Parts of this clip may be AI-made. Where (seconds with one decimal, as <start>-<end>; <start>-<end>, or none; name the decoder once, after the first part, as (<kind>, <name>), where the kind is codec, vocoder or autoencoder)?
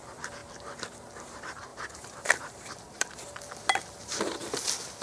1.7-3.1 (vocoder, BigVGAN v2)